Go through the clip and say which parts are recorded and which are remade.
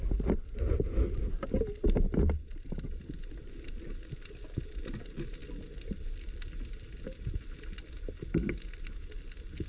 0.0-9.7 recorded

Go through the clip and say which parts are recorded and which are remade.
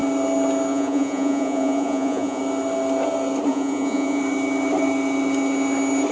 0.0-0.7 recorded; 0.7-2.4 remade; 2.4-3.5 recorded; 3.5-4.2 remade; 4.2-6.1 recorded